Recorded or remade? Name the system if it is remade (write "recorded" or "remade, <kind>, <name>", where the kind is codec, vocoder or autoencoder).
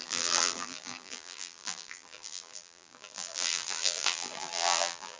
remade, vocoder, BigVGAN v2